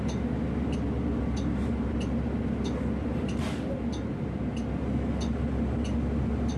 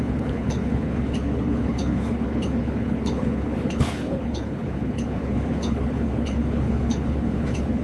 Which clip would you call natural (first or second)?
first